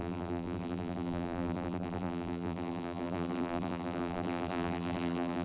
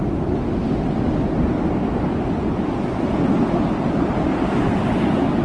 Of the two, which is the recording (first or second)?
second